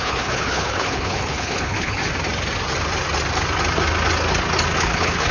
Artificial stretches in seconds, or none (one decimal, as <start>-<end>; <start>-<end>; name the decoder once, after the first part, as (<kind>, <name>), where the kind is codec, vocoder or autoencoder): 0.0-2.0 (codec, HILCodec); 4.8-5.3